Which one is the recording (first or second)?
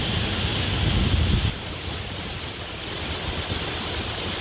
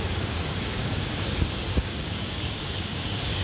first